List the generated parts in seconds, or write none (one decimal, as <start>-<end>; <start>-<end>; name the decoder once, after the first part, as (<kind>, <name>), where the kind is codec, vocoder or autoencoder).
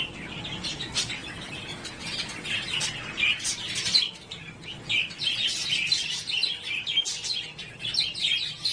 1.2-2.8 (vocoder, WaveNeXt)